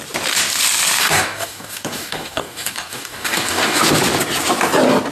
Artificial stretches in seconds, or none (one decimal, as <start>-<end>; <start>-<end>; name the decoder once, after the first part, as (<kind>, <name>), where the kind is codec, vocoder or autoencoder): 1.0-3.8 (codec, DAC)